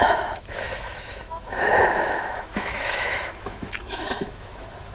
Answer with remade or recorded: remade